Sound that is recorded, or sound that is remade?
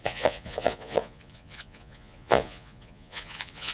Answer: remade